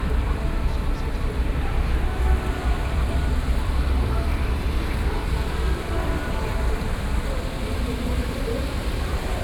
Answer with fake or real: fake